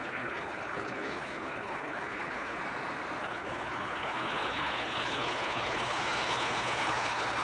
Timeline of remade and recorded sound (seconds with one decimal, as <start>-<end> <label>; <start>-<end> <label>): 0.0-2.6 remade; 2.6-3.2 recorded; 3.2-7.4 remade